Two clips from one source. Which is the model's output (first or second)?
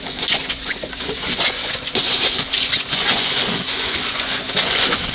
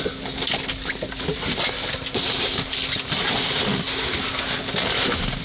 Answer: first